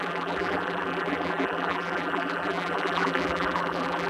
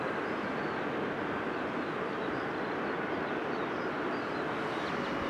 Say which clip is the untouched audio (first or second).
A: second